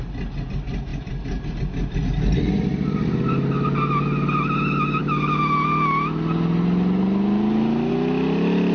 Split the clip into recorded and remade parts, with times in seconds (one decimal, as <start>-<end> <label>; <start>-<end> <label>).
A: 0.0-8.7 recorded